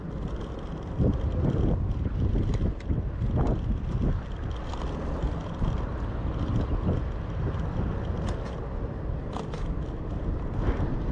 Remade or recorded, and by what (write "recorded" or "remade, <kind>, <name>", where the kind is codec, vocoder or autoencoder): recorded